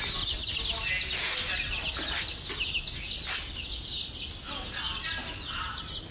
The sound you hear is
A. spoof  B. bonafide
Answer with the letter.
B